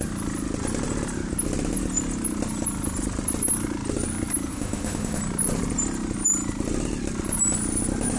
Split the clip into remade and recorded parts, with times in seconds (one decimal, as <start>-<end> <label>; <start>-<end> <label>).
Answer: 0.0-4.5 recorded; 4.5-5.2 remade; 5.2-8.2 recorded